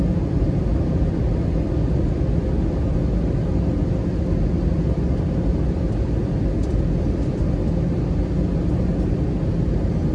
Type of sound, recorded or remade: recorded